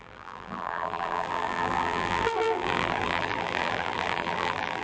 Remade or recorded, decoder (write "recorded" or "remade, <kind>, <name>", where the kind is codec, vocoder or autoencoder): remade, vocoder, BigVGAN v2